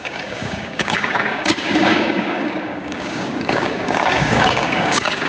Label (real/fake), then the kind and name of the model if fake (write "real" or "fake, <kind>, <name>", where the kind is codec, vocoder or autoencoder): fake, codec, DAC